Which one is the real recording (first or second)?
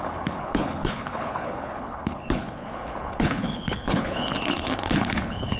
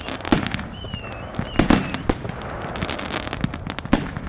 second